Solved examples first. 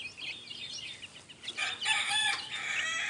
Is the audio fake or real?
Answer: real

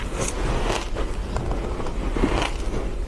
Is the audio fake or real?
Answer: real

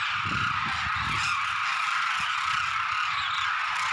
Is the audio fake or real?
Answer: real